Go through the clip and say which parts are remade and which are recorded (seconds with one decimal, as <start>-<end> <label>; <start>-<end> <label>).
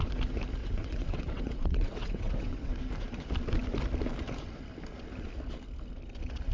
0.0-0.6 recorded; 0.6-2.7 remade; 2.7-6.5 recorded